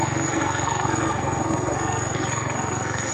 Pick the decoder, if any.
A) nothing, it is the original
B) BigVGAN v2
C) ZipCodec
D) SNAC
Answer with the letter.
D